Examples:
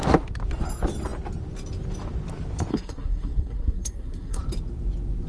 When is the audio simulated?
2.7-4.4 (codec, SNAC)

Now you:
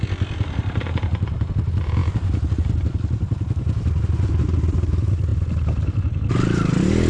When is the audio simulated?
none